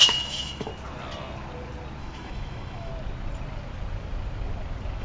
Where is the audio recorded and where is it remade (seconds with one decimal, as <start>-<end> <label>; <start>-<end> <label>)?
0.0-0.7 remade; 0.7-2.0 recorded; 2.0-2.9 remade; 2.9-5.0 recorded